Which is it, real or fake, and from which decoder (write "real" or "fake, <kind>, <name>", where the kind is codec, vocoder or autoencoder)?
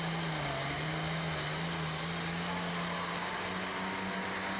real